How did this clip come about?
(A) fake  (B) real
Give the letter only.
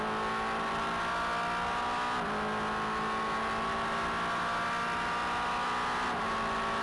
B